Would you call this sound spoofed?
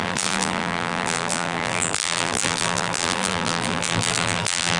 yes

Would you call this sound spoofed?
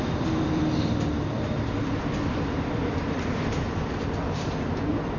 yes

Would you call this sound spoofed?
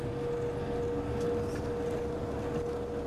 no